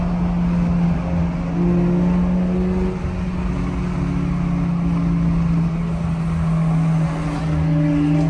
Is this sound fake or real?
real